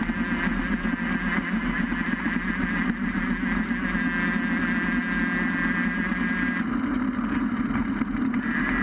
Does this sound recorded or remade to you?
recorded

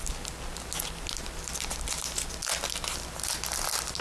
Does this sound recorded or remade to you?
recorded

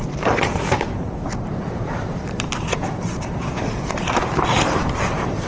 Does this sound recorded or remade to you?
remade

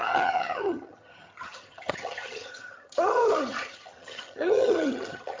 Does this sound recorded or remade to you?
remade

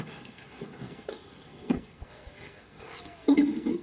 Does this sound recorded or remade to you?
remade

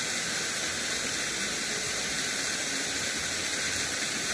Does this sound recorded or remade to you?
recorded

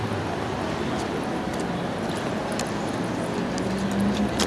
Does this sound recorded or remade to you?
recorded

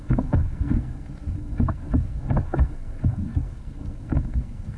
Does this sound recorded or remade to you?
remade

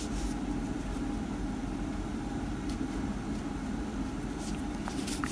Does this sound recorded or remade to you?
recorded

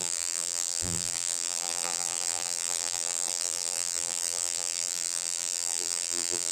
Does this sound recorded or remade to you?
remade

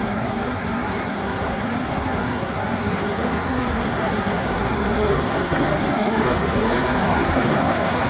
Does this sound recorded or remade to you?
remade